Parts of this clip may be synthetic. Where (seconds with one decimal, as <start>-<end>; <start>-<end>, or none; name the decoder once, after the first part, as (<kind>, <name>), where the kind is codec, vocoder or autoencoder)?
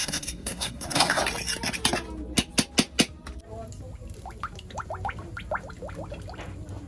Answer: 0.0-1.2 (codec, SNAC)